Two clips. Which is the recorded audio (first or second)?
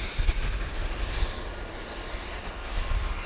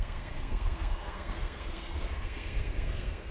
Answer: first